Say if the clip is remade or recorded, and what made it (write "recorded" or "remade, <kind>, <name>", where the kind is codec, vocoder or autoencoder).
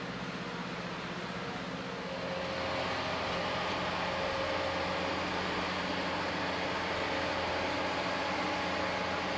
recorded